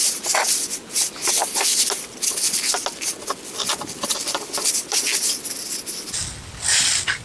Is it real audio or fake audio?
real